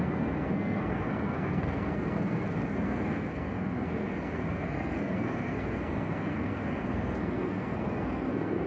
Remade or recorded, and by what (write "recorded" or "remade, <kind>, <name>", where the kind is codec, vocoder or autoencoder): remade, codec, SNAC